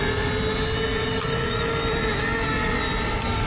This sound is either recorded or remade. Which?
recorded